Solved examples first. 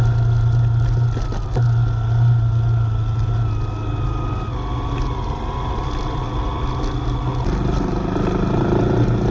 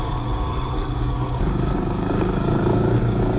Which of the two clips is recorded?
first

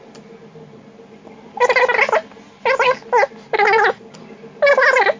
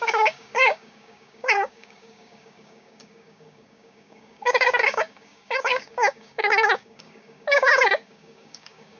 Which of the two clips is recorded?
first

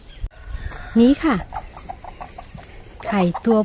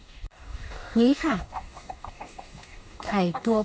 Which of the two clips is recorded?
first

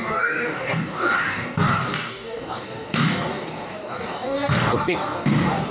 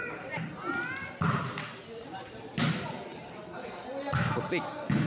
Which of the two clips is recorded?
second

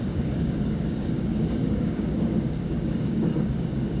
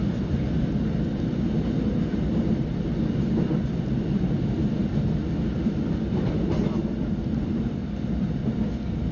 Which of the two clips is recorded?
second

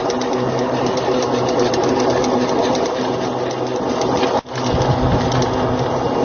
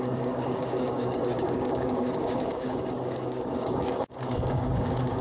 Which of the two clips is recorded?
first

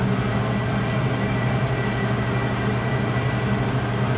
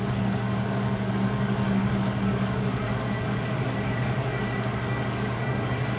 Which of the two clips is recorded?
first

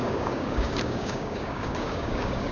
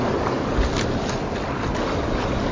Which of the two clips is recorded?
second